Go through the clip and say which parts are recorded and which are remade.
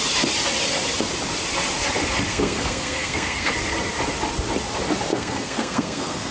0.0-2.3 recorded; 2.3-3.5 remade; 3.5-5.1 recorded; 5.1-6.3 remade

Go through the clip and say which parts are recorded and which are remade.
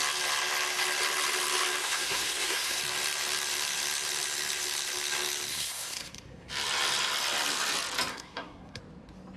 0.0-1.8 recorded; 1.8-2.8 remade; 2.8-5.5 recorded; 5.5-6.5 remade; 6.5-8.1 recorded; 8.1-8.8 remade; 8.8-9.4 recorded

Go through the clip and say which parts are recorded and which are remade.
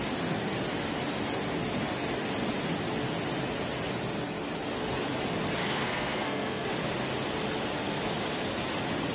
0.0-5.6 recorded; 5.6-6.7 remade; 6.7-9.1 recorded